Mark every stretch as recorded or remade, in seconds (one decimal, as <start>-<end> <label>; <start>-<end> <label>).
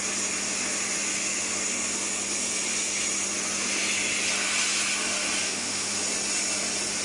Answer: 0.0-5.5 recorded; 5.5-6.0 remade; 6.0-7.0 recorded